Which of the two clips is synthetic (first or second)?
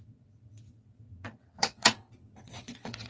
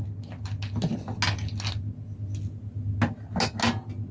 first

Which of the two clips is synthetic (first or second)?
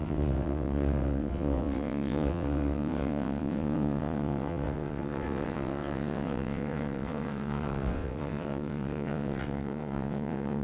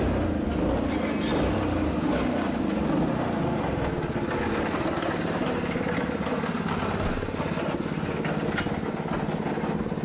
first